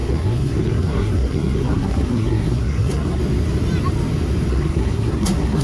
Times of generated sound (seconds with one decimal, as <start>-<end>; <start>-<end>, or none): 0.0-3.2; 4.5-5.6